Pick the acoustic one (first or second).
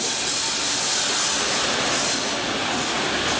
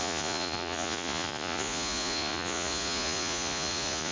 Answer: first